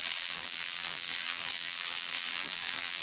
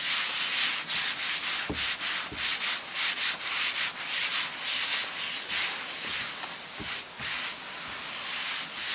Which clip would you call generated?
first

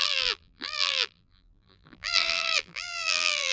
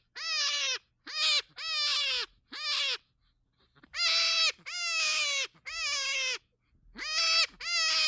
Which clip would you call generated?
first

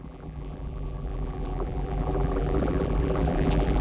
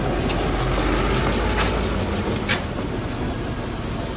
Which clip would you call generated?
first